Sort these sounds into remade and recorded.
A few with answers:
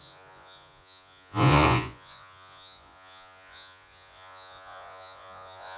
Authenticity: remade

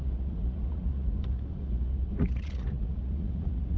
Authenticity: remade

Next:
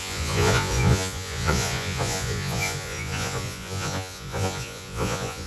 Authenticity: remade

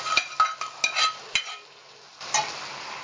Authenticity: recorded